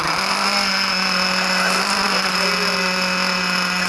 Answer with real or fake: real